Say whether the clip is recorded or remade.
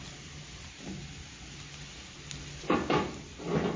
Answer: recorded